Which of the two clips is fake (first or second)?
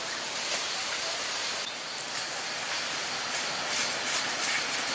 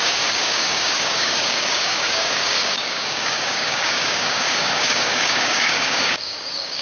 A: second